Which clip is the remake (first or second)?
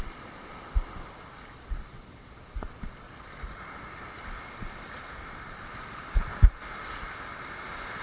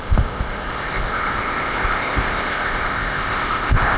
second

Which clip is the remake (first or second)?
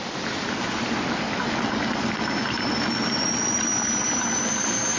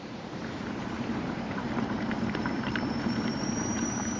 second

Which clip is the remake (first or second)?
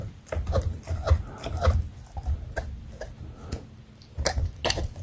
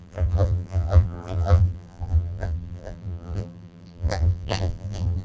second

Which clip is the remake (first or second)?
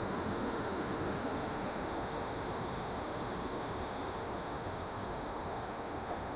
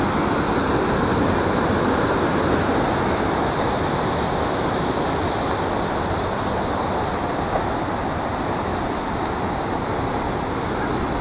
first